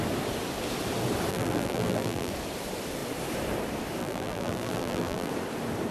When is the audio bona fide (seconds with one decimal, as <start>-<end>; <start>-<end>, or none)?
0.0-1.3; 2.3-4.0; 5.3-5.9